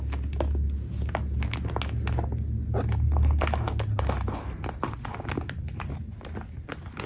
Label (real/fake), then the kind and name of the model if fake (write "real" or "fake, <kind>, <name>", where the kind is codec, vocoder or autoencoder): real